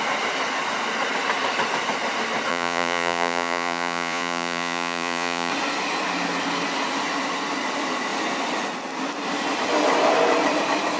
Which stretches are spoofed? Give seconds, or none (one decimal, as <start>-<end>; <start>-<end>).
2.5-5.5